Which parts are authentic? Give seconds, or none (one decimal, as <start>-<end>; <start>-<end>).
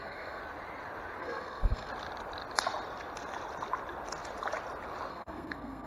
0.4-1.2; 1.9-5.1